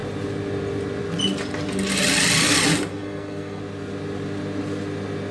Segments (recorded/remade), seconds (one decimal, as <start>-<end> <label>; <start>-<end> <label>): 0.0-2.9 recorded; 2.9-3.6 remade; 3.6-5.3 recorded